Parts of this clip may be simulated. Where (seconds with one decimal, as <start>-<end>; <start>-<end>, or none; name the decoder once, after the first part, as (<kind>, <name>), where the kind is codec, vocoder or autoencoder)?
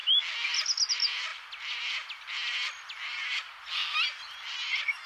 none